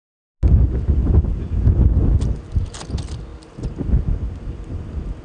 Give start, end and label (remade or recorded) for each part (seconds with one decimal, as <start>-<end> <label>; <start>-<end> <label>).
0.0-5.2 recorded